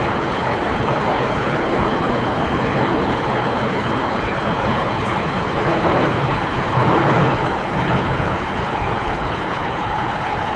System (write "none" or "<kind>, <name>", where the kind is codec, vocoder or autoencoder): codec, HILCodec